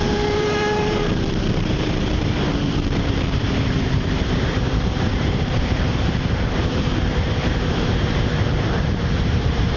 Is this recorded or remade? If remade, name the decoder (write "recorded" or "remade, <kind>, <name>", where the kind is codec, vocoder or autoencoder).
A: remade, vocoder, BigVGAN v2